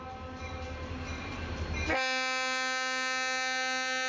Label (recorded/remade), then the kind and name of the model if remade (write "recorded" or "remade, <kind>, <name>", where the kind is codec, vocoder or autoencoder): recorded